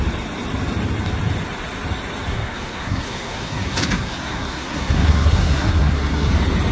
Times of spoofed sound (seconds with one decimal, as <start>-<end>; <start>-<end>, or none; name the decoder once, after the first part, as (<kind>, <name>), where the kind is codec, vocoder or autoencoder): 2.3-6.3 (codec, SNAC)